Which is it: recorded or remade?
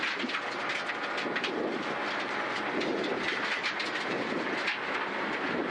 recorded